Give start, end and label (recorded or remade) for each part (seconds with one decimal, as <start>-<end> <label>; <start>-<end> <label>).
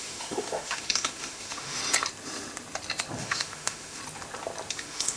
0.0-1.8 remade; 1.8-3.2 recorded; 3.2-4.0 remade; 4.0-4.7 recorded; 4.7-5.2 remade